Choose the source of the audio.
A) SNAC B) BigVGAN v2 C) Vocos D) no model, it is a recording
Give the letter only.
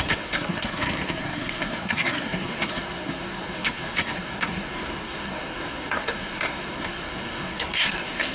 A